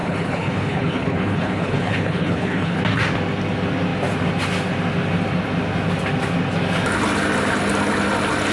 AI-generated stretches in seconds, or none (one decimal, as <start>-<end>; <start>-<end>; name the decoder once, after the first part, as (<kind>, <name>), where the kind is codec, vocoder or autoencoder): 0.0-2.8 (codec, HILCodec)